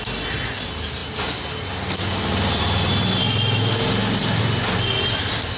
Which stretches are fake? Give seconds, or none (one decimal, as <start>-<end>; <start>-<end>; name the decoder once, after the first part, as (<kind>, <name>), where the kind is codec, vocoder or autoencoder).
none